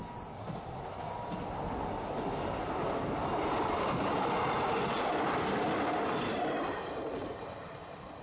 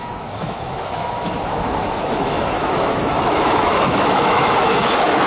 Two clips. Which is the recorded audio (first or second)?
first